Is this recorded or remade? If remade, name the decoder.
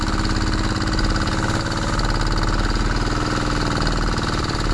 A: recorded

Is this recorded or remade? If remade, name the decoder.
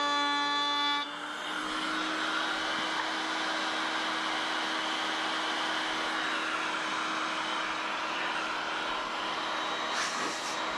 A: recorded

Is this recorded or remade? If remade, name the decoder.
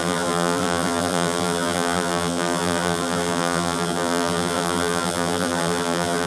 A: remade, vocoder, BigVGAN v2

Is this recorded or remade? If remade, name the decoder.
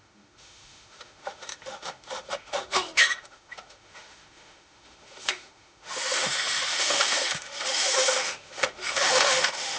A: remade, autoencoder, DAC-VAE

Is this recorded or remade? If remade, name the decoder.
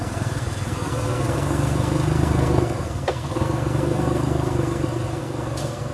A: remade, codec, SNAC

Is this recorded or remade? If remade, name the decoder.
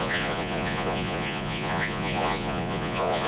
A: remade, vocoder, Vocos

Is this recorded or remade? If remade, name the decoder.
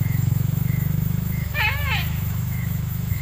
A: remade, autoencoder, DAC-VAE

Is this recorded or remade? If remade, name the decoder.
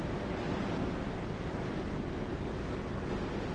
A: recorded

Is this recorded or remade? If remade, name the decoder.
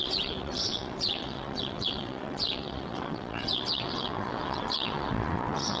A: remade, vocoder, WaveNeXt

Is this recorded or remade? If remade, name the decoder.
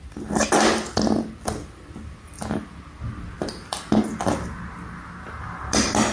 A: recorded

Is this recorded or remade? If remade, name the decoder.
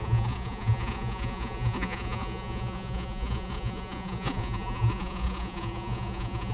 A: remade, vocoder, Vocos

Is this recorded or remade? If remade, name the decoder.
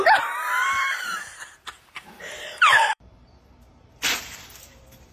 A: remade, vocoder, BigVGAN v2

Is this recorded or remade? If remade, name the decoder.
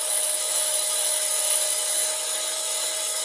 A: remade, autoencoder, DAC-VAE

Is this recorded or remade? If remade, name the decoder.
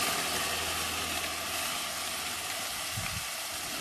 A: recorded